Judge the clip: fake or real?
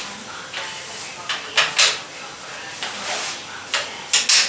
real